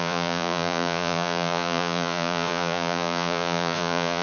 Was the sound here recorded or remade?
remade